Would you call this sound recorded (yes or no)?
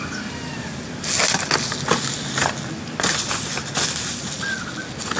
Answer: yes